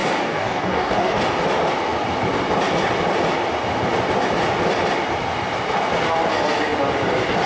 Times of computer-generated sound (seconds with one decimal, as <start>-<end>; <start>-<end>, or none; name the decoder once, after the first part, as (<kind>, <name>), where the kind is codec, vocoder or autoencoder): 0.0-1.2 (codec, DAC)